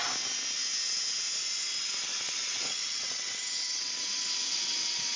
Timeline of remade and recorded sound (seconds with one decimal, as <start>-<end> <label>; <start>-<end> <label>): 0.0-2.1 recorded; 2.1-5.2 remade